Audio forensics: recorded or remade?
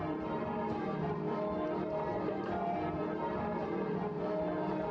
remade